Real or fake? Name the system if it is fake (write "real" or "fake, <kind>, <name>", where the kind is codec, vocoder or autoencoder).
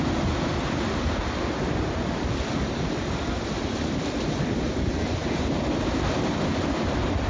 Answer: real